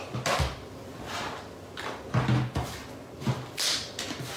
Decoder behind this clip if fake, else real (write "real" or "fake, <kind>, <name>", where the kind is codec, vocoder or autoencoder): real